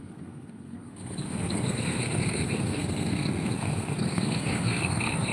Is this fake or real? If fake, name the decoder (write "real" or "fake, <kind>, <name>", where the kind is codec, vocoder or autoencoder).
fake, codec, SNAC